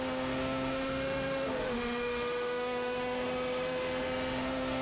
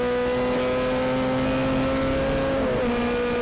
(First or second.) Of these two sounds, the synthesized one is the first